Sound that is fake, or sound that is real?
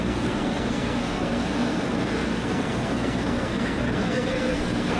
fake